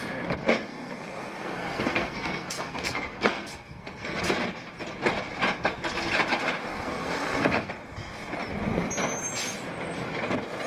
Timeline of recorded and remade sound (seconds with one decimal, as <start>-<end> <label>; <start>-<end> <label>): 0.0-0.7 recorded; 0.7-4.2 remade; 4.2-6.7 recorded; 6.7-7.7 remade; 7.7-10.7 recorded

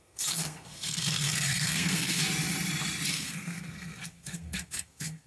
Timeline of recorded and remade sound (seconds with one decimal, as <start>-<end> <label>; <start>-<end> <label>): 0.0-2.2 remade; 2.2-3.1 recorded; 3.1-5.3 remade

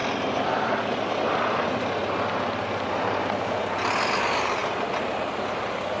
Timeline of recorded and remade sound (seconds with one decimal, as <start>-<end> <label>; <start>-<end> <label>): 0.0-6.0 recorded

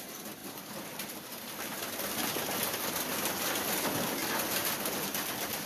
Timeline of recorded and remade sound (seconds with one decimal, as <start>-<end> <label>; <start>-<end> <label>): 0.0-5.7 recorded

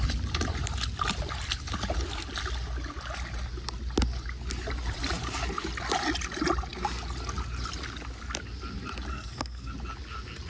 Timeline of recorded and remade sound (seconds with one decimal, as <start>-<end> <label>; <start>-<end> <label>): 0.0-9.1 recorded; 9.1-9.7 remade; 9.7-10.5 recorded

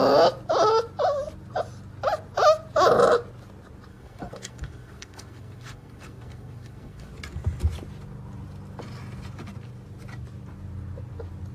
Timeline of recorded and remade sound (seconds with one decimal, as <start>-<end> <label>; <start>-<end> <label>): 0.0-3.9 recorded; 3.9-7.1 remade; 7.1-11.5 recorded

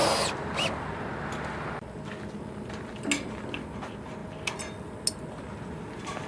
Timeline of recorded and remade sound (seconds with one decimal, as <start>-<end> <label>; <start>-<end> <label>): 0.0-6.3 recorded

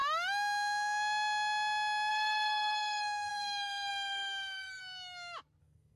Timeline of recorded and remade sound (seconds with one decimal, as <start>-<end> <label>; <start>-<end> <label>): 0.0-2.1 recorded; 2.1-4.8 remade; 4.8-5.6 recorded; 5.6-6.0 remade